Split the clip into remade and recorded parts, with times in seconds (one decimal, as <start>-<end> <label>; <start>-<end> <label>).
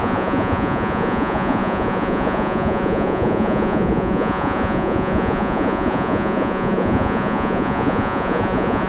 0.0-8.9 remade